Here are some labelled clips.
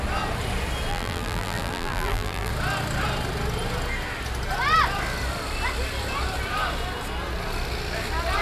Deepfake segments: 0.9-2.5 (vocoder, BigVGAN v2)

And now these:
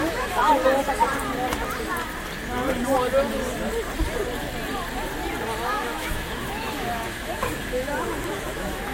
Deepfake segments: 0.0-0.6 (autoencoder, DAC-VAE); 5.7-8.9

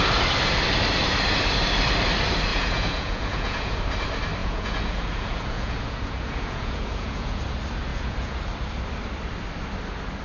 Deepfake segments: 2.5-3.8 (vocoder, Vocos); 4.4-7.4; 7.9-8.5